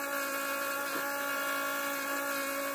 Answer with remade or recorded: recorded